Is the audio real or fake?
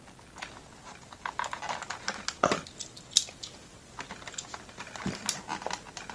real